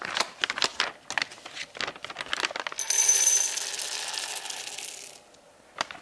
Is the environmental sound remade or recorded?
recorded